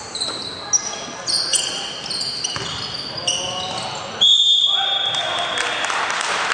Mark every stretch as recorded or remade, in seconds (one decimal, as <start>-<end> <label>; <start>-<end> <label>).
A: 0.0-6.5 recorded